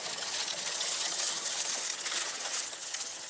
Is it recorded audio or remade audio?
remade